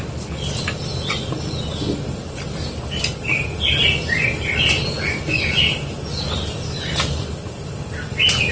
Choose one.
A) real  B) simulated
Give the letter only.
A